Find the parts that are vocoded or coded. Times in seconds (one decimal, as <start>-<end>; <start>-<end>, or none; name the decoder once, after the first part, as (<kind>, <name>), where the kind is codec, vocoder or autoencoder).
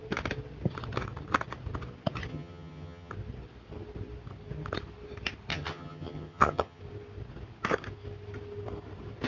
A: 2.3-3.1 (vocoder, HiFi-GAN); 5.5-6.8